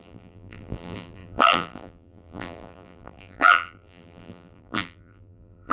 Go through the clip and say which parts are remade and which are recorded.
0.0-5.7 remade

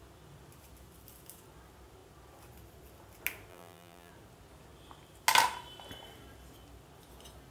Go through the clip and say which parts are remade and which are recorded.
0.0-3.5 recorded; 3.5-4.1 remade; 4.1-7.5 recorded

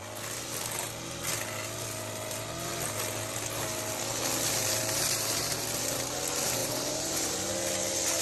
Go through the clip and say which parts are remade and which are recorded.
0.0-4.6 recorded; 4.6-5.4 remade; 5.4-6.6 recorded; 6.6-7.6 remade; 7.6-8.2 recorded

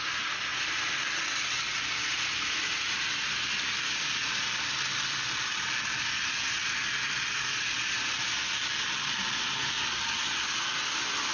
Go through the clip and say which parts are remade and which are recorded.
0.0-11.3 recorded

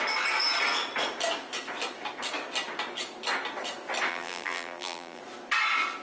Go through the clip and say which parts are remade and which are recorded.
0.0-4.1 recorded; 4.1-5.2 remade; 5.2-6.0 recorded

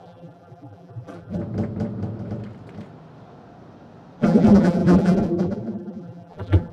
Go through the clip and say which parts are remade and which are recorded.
0.0-1.4 remade; 1.4-4.2 recorded; 4.2-6.7 remade

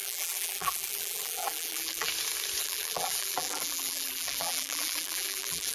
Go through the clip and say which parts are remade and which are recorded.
0.0-2.1 remade; 2.1-2.6 recorded; 2.6-5.7 remade

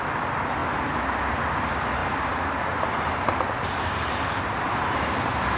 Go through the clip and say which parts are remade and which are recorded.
0.0-0.6 recorded; 0.6-1.2 remade; 1.2-2.0 recorded; 2.0-5.6 remade